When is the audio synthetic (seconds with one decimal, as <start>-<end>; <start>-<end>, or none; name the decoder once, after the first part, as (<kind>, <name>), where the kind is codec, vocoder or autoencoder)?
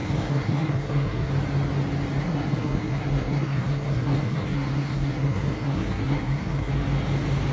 0.0-1.3 (codec, SNAC); 2.2-6.7